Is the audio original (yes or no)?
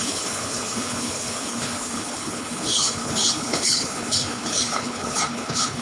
no